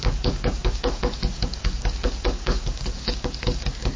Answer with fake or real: fake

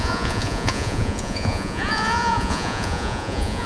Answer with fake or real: fake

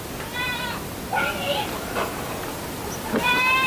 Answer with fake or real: real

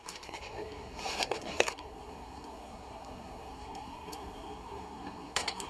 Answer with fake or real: fake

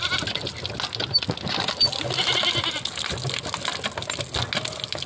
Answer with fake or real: real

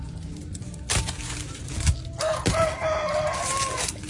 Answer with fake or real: real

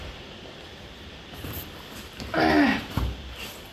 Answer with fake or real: fake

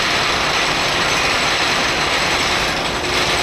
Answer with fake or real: real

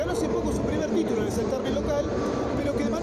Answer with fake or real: fake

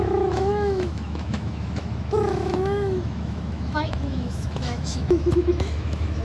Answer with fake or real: fake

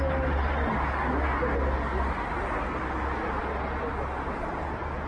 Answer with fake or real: real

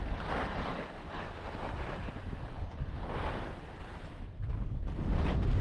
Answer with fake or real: real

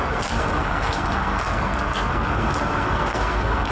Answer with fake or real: fake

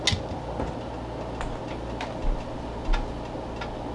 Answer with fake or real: real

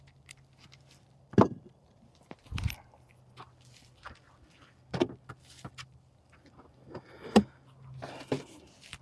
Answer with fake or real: fake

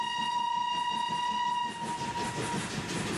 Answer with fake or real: real